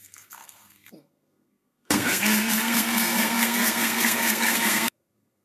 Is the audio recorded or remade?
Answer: remade